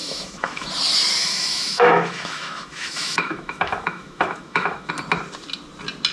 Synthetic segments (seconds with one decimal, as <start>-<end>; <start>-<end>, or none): 0.0-0.7; 1.2-4.9